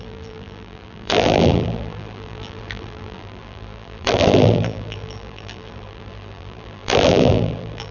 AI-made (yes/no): yes